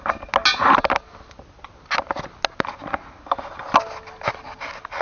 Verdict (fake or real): real